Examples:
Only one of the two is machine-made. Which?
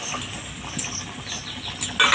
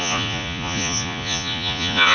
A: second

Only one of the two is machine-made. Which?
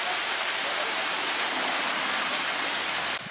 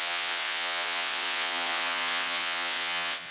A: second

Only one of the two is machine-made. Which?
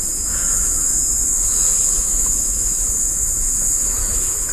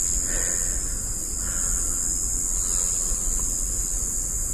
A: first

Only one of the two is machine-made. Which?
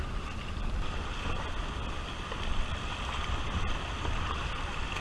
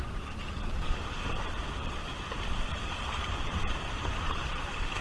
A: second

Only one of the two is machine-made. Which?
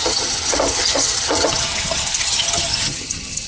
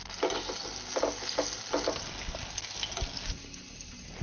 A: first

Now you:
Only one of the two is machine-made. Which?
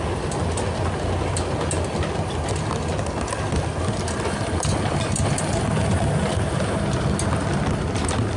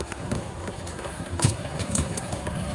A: second